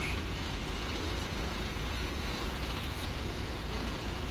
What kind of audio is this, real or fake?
fake